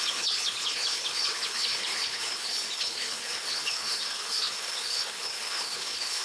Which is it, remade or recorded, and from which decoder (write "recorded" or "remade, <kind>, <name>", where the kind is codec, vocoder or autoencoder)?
remade, codec, HILCodec